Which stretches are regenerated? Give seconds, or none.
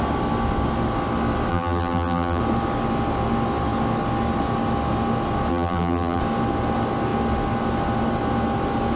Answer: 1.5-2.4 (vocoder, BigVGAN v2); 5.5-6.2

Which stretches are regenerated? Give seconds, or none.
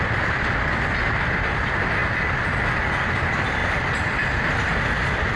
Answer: 0.0-2.0 (vocoder, BigVGAN v2); 3.1-5.4